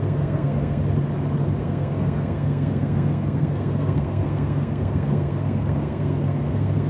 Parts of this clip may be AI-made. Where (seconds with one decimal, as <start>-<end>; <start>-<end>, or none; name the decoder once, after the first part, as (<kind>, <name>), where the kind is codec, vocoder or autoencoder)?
0.0-0.8 (codec, SNAC); 1.6-6.9